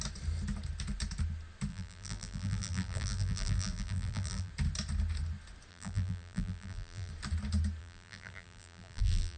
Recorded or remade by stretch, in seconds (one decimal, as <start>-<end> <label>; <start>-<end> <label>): 0.0-1.7 recorded; 1.7-4.5 remade; 4.5-5.7 recorded; 5.7-7.1 remade; 7.1-7.8 recorded; 7.8-9.4 remade